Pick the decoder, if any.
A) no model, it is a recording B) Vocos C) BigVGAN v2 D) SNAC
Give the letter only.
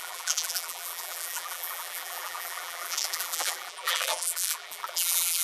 C